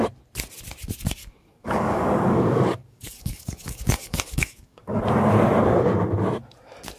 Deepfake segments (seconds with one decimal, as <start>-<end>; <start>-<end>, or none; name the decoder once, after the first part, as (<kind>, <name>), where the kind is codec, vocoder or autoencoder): 1.2-5.0 (codec, DAC)